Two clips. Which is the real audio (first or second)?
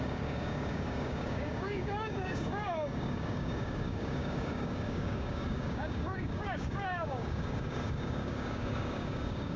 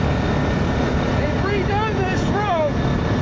second